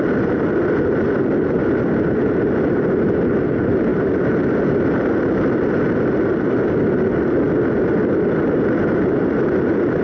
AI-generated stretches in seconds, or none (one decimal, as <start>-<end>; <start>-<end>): none